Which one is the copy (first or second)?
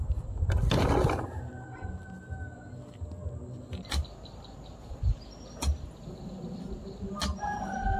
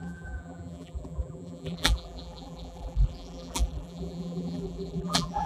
second